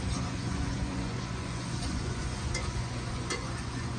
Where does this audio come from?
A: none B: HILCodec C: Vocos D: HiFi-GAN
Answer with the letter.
C